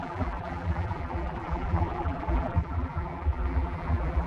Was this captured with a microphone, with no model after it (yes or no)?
no